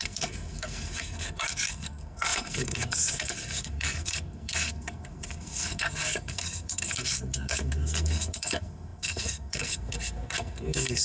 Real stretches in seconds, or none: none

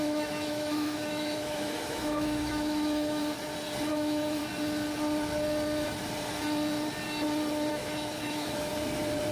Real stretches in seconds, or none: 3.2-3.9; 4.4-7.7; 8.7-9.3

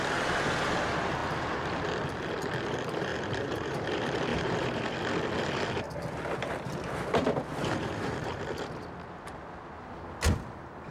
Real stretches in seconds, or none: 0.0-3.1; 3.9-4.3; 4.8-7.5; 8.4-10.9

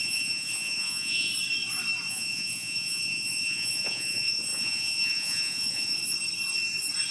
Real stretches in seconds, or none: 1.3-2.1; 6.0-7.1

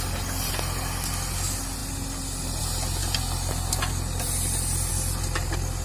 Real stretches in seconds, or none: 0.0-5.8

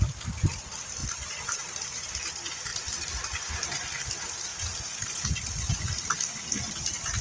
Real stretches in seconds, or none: 0.0-1.0; 2.2-2.7; 3.5-7.2

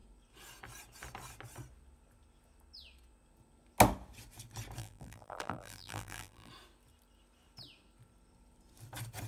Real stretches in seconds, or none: 0.0-4.8; 6.5-9.3

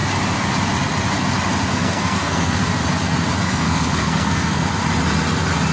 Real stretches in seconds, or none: 0.0-1.7; 2.6-3.4; 4.7-5.7